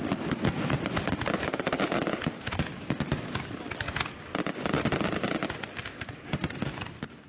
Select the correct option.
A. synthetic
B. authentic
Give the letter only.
B